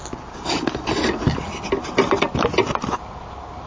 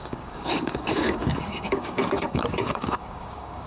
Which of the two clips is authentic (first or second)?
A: first